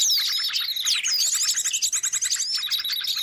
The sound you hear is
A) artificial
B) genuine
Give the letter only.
B